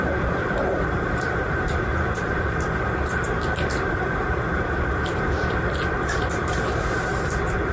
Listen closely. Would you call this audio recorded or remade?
remade